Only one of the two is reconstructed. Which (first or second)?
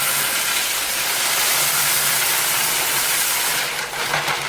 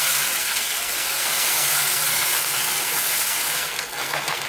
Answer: second